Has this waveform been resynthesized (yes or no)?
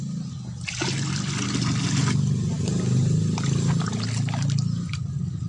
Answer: no